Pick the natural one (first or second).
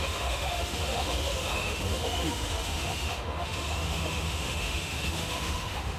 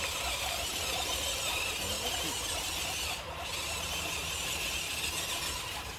second